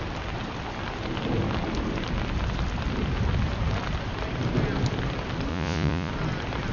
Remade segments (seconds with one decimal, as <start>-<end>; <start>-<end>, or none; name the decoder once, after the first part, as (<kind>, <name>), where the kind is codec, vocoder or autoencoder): 5.5-6.1 (vocoder, Vocos)